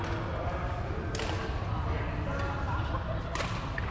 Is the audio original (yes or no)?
yes